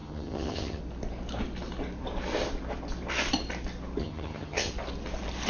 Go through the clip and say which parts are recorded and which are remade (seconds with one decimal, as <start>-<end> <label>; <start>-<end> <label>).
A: 0.0-0.8 remade; 0.8-4.0 recorded; 4.0-4.7 remade; 4.7-5.5 recorded